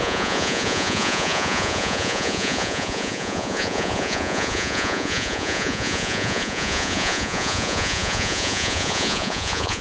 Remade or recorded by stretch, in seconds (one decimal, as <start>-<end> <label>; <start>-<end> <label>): 0.0-9.8 remade